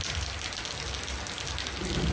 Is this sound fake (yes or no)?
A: no